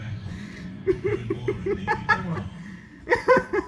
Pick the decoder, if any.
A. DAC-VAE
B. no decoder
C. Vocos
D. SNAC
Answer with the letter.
C